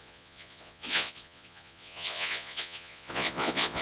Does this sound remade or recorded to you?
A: remade